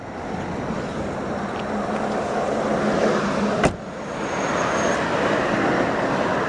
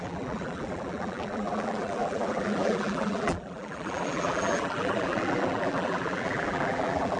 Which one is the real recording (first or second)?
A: first